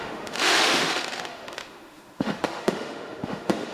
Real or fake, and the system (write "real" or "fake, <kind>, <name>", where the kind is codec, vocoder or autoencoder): fake, autoencoder, DAC-VAE